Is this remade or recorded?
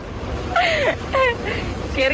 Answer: remade